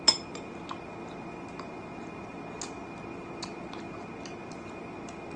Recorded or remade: recorded